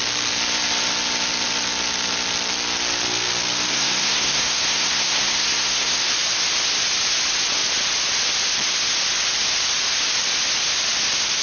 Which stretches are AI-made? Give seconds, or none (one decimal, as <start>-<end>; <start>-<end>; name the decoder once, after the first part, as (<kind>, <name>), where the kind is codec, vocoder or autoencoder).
3.7-6.1 (codec, SNAC)